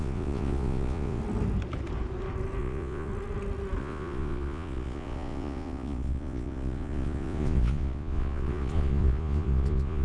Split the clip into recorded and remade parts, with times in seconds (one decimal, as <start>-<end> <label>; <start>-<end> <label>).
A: 0.0-1.2 remade; 1.2-2.6 recorded; 2.6-3.1 remade; 3.1-3.8 recorded; 3.8-10.0 remade